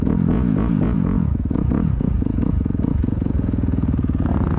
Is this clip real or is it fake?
fake